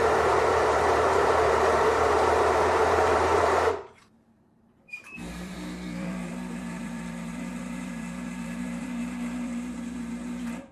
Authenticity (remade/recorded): remade